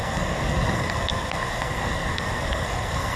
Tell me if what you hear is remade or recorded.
remade